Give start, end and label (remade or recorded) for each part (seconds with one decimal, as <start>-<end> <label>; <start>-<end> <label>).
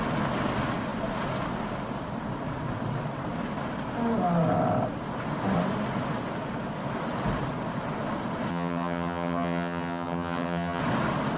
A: 0.0-8.5 recorded; 8.5-10.8 remade; 10.8-11.4 recorded